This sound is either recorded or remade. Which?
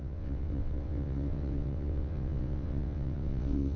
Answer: remade